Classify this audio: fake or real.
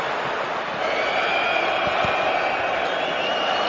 real